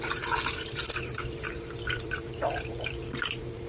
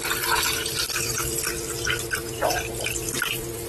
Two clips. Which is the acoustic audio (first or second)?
second